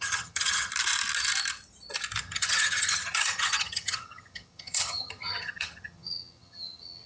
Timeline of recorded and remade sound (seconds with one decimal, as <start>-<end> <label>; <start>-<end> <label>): 0.0-0.7 remade; 0.7-2.2 recorded; 2.2-7.1 remade